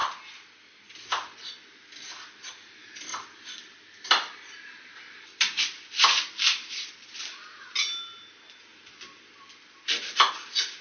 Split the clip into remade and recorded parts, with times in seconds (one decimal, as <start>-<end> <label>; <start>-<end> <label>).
0.0-3.1 recorded; 3.1-7.2 remade; 7.2-10.8 recorded